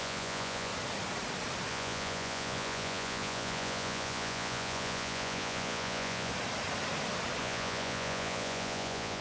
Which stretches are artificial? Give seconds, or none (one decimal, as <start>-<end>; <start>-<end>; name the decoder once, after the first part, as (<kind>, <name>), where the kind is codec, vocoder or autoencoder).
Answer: 0.0-0.7 (vocoder, Vocos); 1.7-6.3; 7.4-9.2